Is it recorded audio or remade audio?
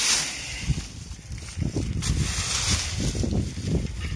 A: recorded